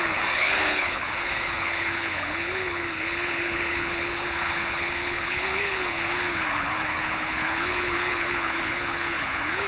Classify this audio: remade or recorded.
remade